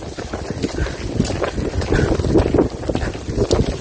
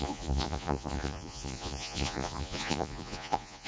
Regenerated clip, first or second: second